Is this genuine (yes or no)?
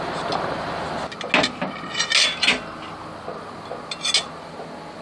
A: yes